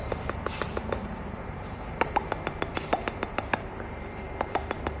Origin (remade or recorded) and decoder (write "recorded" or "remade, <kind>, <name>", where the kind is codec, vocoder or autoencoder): remade, vocoder, BigVGAN v2